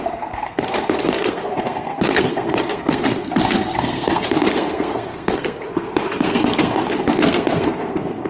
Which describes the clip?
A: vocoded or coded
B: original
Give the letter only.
A